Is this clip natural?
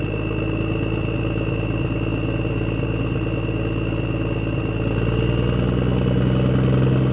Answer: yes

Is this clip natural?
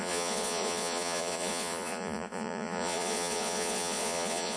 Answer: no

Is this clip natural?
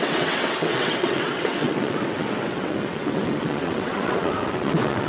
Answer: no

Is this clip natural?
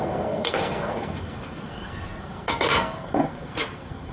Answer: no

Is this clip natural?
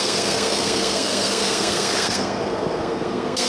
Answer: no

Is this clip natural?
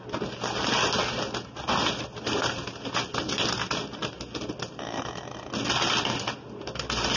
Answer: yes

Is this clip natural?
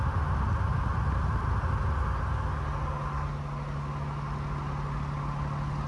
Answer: yes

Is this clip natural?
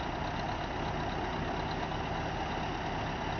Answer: yes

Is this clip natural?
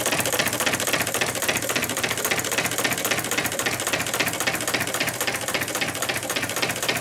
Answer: yes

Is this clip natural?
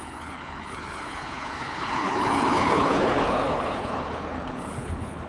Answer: no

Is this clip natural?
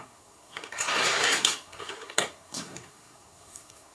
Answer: no